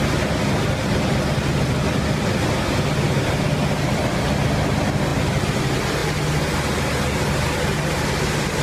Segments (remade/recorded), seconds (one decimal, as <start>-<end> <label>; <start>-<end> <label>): 0.0-8.6 recorded